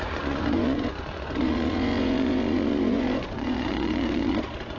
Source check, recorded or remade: remade